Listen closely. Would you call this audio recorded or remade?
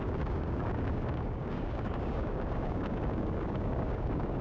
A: remade